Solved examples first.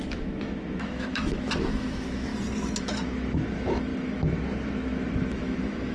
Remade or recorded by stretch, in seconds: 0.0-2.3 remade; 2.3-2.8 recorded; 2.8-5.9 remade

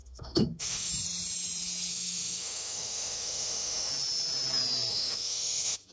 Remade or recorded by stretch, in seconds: 0.0-0.9 remade; 0.9-1.9 recorded; 1.9-3.9 remade; 3.9-4.9 recorded; 4.9-5.9 remade